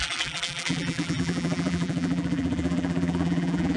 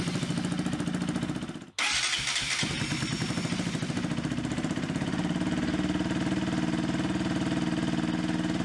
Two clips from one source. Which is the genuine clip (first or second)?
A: second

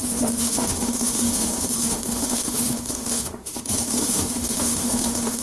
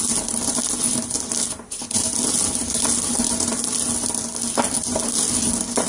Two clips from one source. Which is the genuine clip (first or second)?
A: second